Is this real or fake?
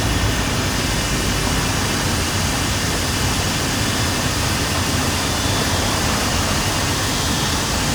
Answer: real